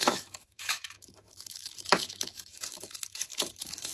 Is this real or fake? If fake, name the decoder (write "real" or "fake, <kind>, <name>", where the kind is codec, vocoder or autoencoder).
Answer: fake, autoencoder, DAC-VAE